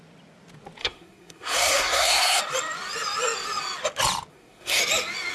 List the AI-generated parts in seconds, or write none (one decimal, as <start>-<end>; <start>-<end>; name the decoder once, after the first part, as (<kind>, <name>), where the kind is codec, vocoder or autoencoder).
0.8-2.4 (codec, SNAC); 4.3-4.8